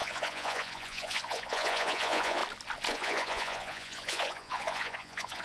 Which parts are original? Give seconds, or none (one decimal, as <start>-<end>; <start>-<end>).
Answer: 2.4-2.9